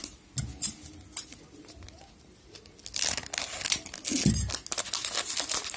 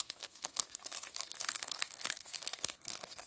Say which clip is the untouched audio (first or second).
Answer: first